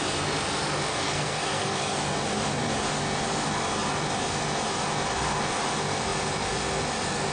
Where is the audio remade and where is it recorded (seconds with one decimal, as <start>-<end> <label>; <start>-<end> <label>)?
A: 0.0-0.9 recorded; 0.9-2.0 remade; 2.0-7.3 recorded